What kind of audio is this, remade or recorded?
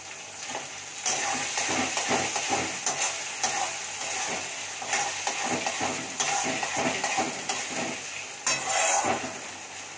recorded